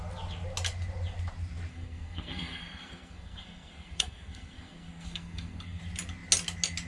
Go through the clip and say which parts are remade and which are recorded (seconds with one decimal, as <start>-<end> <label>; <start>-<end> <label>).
0.0-1.7 recorded; 1.7-5.8 remade; 5.8-6.9 recorded